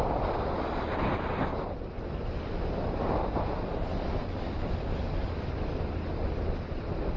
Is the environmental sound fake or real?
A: real